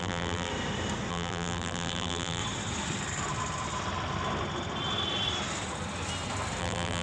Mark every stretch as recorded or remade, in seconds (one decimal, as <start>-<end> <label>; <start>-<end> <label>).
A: 0.0-0.5 remade; 0.5-1.1 recorded; 1.1-2.4 remade; 2.4-6.6 recorded; 6.6-7.0 remade